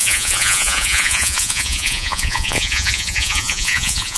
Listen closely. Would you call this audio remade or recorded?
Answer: remade